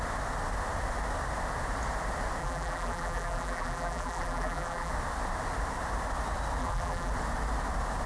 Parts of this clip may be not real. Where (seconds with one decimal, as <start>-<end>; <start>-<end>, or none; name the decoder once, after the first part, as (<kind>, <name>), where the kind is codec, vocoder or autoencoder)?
2.4-4.9 (vocoder, BigVGAN v2); 6.6-7.1